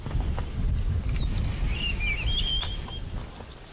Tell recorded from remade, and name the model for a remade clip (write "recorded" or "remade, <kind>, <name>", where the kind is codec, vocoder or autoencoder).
recorded